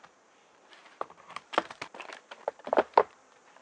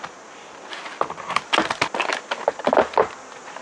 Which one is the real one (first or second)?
second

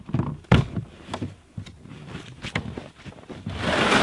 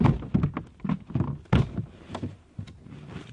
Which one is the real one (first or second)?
second